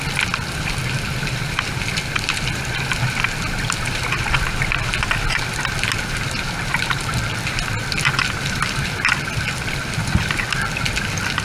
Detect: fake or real real